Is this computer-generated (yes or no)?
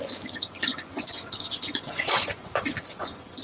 yes